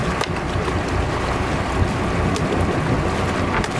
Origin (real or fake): real